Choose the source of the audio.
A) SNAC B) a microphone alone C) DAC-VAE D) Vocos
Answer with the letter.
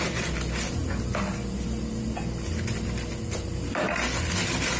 B